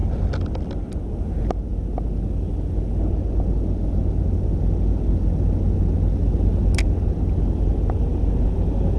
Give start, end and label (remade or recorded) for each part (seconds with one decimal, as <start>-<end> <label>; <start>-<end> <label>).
0.0-9.0 recorded